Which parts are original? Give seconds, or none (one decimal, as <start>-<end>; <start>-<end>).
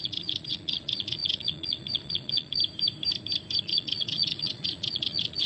2.6-3.6